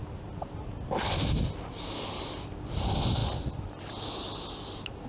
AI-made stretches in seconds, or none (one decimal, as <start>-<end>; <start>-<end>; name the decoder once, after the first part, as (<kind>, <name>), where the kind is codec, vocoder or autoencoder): none